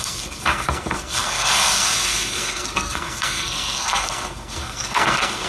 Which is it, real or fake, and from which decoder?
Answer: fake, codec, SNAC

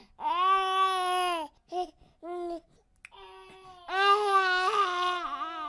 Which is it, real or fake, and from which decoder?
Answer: real